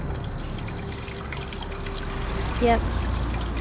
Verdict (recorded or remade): recorded